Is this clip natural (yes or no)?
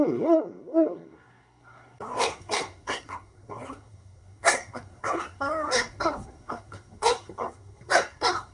no